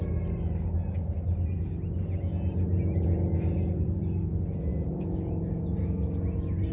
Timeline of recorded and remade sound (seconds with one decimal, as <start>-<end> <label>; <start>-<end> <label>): 0.0-4.7 recorded; 4.7-5.3 remade; 5.3-6.7 recorded